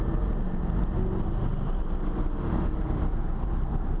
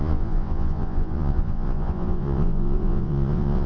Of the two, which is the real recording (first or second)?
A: first